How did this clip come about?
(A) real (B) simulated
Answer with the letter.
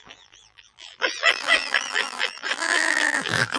B